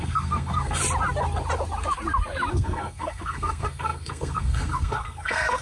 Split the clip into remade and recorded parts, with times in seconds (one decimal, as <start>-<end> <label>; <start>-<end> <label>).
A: 0.0-0.8 remade; 0.8-2.5 recorded; 2.5-5.6 remade